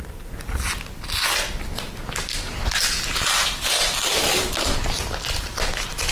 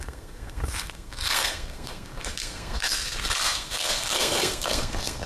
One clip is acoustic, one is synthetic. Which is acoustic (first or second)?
first